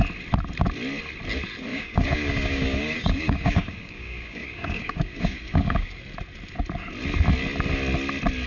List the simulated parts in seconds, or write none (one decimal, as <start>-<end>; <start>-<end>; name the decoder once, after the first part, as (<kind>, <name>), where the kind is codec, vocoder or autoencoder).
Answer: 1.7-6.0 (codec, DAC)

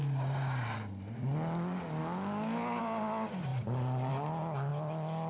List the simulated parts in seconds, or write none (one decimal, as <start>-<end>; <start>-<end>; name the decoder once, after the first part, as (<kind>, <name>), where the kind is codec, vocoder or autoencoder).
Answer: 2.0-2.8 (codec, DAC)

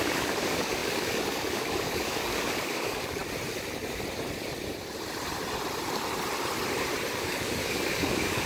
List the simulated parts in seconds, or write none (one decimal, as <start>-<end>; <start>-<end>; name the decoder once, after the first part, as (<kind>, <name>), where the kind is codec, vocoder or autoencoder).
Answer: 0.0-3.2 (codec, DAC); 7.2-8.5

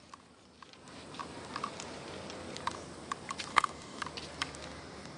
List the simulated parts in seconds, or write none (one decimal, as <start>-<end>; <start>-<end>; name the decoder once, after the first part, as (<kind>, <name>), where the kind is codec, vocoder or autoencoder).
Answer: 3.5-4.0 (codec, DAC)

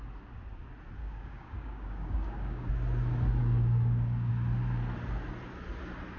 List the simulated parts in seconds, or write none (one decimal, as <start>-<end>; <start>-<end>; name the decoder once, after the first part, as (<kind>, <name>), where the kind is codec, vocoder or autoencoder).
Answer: 1.0-2.7 (codec, DAC); 3.4-4.3

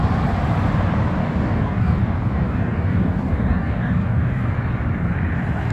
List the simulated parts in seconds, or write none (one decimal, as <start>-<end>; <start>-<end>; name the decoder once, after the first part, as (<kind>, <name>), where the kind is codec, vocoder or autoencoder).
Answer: 1.2-4.5 (codec, DAC)